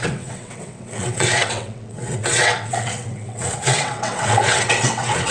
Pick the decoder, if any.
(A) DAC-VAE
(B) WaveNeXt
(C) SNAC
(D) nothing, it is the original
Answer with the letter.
B